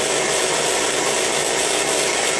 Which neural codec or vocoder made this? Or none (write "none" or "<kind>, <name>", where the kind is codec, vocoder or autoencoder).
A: none